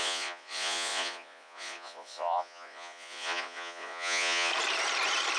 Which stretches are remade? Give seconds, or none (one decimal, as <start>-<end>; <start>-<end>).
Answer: 0.0-4.5